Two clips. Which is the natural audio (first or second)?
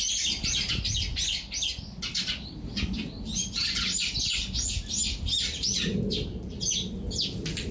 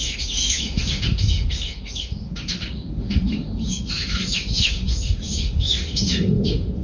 first